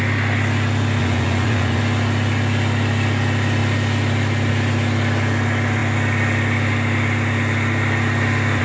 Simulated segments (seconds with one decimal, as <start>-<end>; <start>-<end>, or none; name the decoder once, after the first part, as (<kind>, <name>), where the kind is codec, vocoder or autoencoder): 1.0-1.8 (vocoder, Vocos)

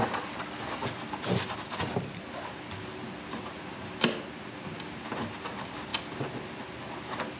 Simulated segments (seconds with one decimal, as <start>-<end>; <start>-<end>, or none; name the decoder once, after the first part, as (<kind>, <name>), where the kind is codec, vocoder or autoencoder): none

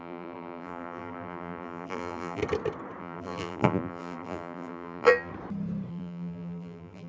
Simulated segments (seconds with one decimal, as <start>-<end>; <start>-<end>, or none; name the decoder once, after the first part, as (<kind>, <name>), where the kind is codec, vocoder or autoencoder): 0.0-2.4 (vocoder, BigVGAN v2); 3.0-5.3; 5.9-7.1

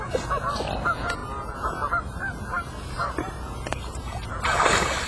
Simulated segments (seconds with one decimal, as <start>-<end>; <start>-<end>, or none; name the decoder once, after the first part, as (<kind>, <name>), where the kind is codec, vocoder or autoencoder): 1.2-4.3 (vocoder, BigVGAN v2)

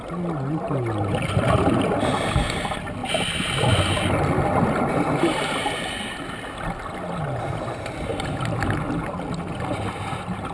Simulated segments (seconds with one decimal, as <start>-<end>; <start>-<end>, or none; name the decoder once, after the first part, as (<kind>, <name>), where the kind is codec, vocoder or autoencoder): none

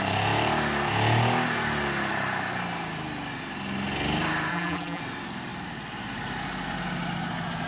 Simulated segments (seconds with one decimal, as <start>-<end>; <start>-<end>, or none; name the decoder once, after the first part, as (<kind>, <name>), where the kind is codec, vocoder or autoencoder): 4.5-5.0 (vocoder, BigVGAN v2)